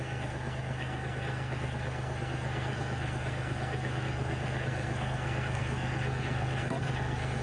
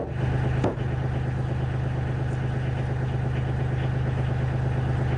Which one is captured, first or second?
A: second